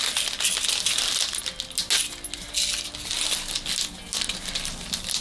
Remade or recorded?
recorded